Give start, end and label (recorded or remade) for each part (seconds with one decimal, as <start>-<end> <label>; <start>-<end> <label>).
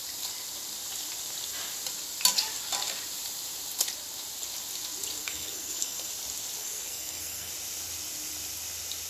0.0-5.2 recorded; 5.2-6.1 remade; 6.1-6.6 recorded; 6.6-7.5 remade; 7.5-9.1 recorded